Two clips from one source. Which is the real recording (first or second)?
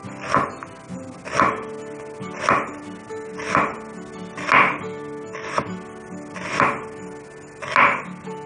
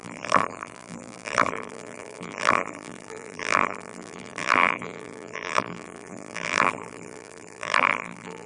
first